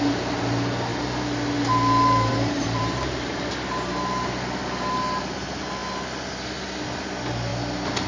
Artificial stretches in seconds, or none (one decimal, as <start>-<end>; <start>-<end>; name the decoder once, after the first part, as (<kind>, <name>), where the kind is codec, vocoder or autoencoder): 2.3-3.5 (vocoder, BigVGAN v2)